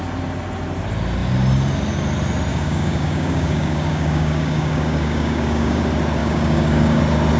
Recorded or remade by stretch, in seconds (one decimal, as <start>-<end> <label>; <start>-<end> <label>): 0.0-2.5 recorded; 2.5-5.8 remade; 5.8-6.2 recorded; 6.2-7.0 remade; 7.0-7.4 recorded